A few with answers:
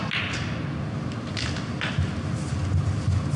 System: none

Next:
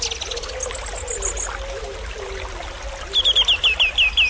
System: none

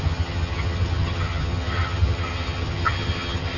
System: vocoder, HiFi-GAN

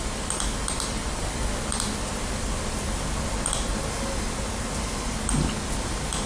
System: none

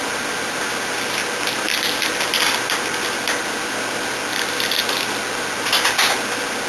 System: none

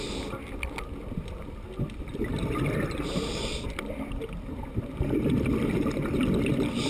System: none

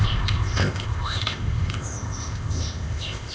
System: codec, ZipCodec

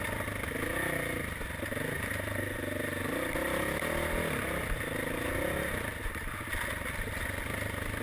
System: none